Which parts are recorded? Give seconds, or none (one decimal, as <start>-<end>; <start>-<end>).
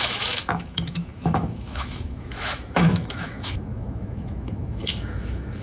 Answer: none